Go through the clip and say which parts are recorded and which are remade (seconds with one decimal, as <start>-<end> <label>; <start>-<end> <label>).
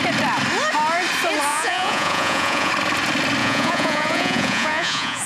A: 0.0-1.5 recorded; 1.5-2.7 remade; 2.7-3.4 recorded; 3.4-5.3 remade